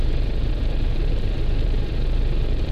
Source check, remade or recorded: remade